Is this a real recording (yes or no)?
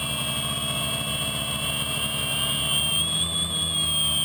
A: yes